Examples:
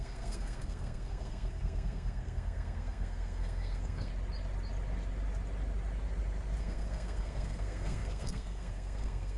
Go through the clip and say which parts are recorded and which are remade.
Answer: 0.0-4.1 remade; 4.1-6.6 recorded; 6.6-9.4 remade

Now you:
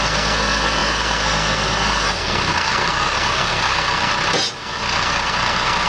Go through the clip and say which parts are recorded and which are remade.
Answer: 0.0-4.1 remade; 4.1-4.6 recorded; 4.6-5.9 remade

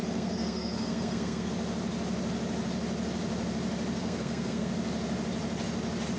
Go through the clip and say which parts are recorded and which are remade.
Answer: 0.0-1.5 remade; 1.5-4.0 recorded; 4.0-4.7 remade; 4.7-6.2 recorded